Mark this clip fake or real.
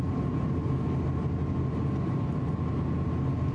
real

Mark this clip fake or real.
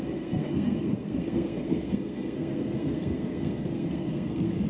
fake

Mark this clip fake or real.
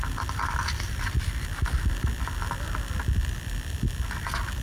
real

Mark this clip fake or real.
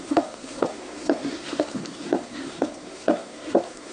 fake